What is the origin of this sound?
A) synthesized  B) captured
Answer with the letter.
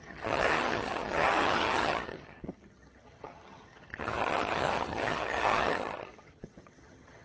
A